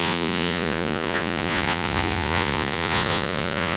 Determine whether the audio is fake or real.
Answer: fake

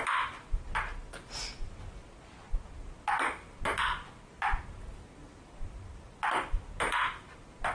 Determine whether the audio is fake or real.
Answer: real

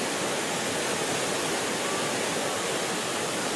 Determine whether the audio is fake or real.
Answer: real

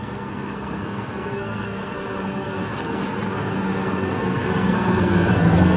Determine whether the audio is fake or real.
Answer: fake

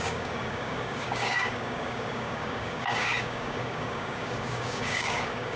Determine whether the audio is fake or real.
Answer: fake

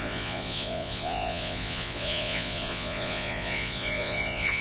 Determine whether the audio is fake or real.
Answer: fake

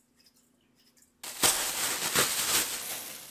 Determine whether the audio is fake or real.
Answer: real